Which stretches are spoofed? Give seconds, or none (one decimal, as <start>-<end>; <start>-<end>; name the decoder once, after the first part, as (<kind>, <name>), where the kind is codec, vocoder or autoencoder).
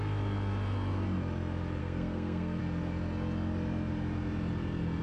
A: 1.8-2.6 (codec, SNAC)